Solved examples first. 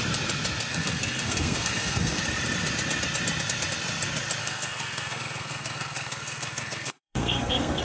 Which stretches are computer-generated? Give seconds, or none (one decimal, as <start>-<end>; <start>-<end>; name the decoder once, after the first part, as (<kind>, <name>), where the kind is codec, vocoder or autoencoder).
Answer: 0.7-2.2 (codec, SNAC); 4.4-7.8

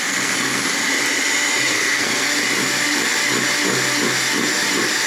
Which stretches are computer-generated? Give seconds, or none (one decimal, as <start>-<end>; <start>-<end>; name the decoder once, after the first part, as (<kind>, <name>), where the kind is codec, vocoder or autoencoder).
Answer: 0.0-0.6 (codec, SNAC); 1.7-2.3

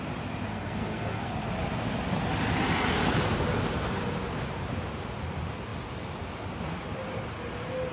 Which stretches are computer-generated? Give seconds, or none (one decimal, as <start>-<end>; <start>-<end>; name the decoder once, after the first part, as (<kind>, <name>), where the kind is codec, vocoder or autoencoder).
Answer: 0.5-1.3 (codec, SNAC)

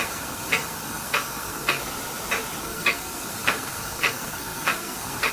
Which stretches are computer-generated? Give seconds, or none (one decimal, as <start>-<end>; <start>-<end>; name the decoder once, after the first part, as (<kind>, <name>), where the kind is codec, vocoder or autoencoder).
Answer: 0.0-1.8 (codec, SNAC); 2.6-5.3